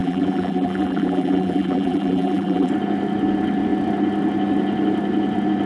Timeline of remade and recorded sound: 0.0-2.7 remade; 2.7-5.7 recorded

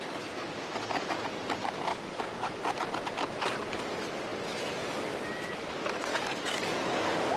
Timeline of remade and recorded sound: 0.0-1.9 recorded; 1.9-2.6 remade; 2.6-6.1 recorded; 6.1-7.4 remade

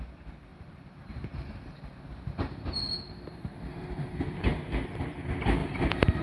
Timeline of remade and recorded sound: 0.0-0.5 recorded; 0.5-4.2 remade; 4.2-5.6 recorded; 5.6-6.2 remade

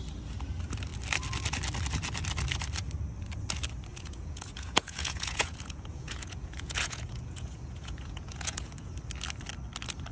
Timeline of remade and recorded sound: 0.0-3.9 recorded; 3.9-8.9 remade; 8.9-10.1 recorded

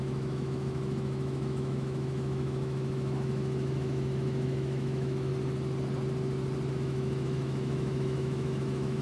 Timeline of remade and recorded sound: 0.0-5.3 remade; 5.3-6.7 recorded; 6.7-9.0 remade

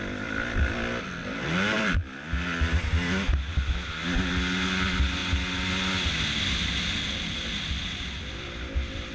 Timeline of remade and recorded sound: 0.0-9.1 recorded

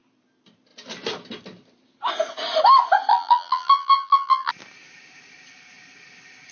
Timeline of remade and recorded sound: 0.0-3.1 recorded; 3.1-4.5 remade; 4.5-6.5 recorded